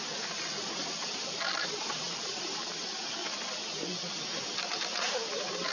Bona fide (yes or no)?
yes